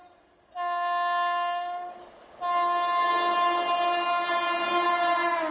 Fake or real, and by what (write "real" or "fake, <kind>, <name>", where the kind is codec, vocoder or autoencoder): real